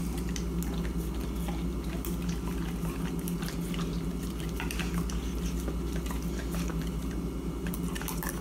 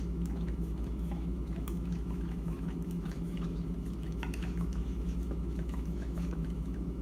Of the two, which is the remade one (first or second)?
second